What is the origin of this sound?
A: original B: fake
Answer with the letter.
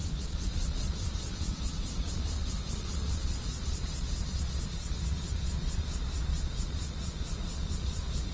B